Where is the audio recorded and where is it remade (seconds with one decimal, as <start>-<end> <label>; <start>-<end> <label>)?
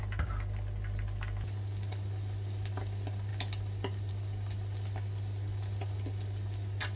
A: 0.0-7.0 recorded